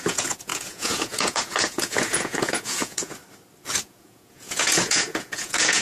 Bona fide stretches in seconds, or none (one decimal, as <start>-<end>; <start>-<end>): 3.2-3.8